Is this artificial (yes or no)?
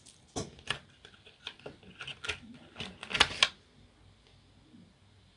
no